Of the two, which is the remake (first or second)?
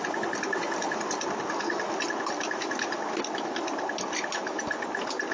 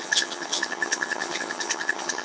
second